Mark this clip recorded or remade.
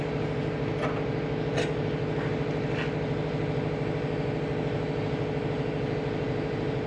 recorded